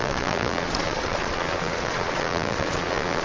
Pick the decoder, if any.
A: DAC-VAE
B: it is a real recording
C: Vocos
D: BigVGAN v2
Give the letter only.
C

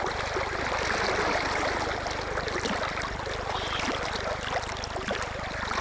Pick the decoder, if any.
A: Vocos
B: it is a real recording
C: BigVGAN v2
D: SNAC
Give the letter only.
B